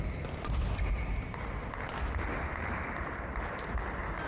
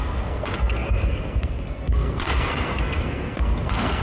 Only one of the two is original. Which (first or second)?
first